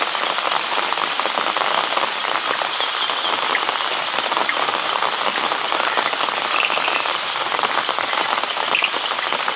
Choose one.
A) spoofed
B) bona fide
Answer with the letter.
A